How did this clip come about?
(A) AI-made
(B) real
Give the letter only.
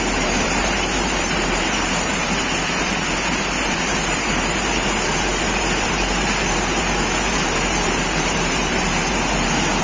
A